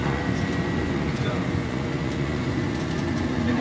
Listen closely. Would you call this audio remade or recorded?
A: remade